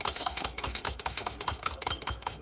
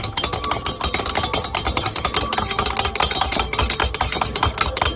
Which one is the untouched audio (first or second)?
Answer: second